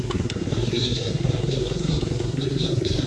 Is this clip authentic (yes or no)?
no